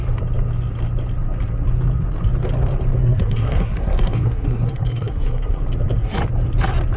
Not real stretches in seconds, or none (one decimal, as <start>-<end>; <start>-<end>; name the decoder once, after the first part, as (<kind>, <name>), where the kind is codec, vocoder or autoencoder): 3.0-5.6 (codec, SNAC)